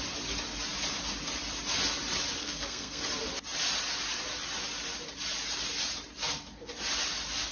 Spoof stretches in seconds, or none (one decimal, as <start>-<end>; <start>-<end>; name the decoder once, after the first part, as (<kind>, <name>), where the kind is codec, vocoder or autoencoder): 2.4-3.0 (codec, SNAC)